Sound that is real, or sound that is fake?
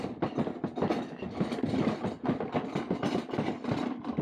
real